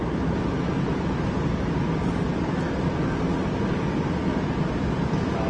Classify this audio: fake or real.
real